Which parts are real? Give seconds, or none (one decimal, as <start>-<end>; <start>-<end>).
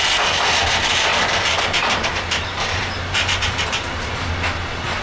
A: 0.0-1.1; 4.1-5.0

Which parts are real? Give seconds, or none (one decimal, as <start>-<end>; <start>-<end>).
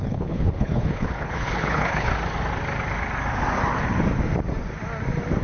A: 2.1-5.4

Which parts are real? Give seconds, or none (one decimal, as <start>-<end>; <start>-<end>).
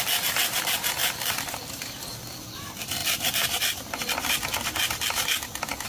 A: 0.0-1.0; 1.8-3.0; 4.3-5.9